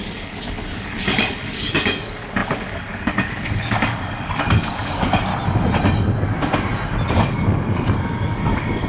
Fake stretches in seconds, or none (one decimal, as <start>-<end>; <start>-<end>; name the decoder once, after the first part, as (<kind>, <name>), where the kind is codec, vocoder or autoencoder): 0.0-5.3 (codec, DAC); 7.1-8.9

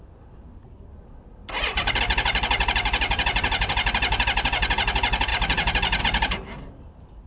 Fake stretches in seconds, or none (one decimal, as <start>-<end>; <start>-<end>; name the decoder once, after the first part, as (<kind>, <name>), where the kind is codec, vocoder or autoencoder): 0.0-1.4 (vocoder, BigVGAN v2); 2.0-7.3

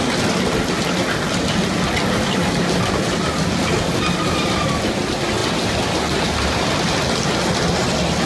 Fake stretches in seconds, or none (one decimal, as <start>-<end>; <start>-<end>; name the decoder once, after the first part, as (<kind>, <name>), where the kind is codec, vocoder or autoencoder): none